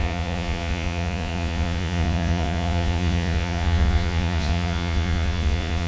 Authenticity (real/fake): fake